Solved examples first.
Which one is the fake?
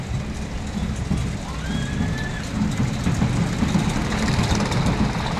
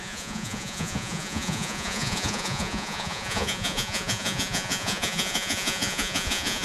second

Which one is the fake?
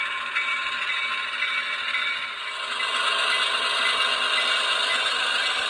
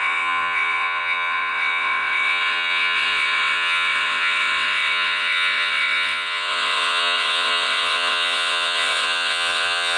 second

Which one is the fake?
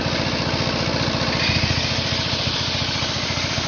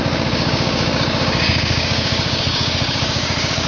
second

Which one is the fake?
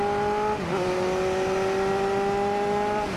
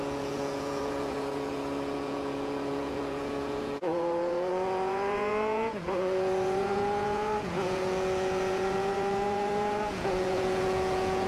second